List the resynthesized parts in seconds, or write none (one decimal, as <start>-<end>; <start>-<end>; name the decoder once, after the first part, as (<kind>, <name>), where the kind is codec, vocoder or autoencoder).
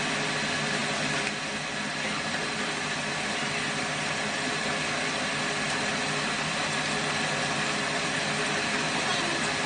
none